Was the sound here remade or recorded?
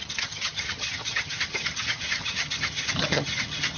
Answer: remade